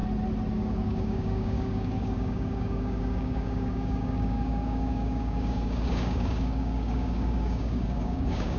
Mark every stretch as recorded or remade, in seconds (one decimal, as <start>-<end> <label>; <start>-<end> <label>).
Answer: 0.0-0.5 recorded; 0.5-8.6 remade